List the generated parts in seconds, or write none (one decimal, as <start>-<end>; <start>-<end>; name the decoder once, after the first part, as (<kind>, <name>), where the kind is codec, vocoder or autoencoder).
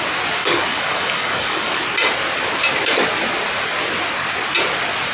0.4-1.8 (codec, DAC)